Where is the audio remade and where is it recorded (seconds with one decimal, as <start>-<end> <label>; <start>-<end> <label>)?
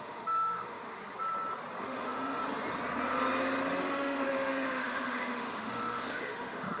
0.0-1.0 remade; 1.0-1.8 recorded; 1.8-2.4 remade; 2.4-3.8 recorded; 3.8-6.8 remade